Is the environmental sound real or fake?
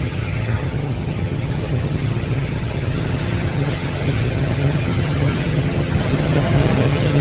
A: fake